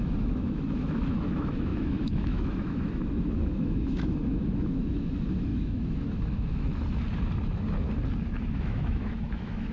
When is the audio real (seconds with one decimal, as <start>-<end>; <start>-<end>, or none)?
6.7-8.4